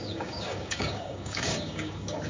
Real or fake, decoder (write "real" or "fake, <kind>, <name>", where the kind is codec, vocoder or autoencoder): fake, codec, DAC